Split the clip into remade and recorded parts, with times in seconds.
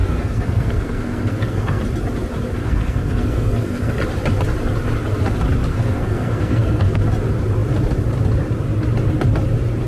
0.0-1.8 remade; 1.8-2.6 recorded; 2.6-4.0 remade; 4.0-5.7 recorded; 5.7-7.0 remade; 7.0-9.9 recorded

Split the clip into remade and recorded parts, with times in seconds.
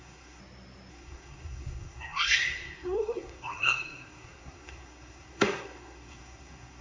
0.0-0.4 remade; 0.4-0.9 recorded; 0.9-6.8 remade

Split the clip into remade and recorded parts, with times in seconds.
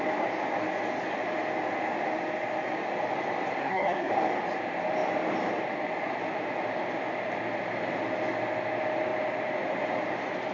0.0-3.6 recorded; 3.6-4.1 remade; 4.1-10.5 recorded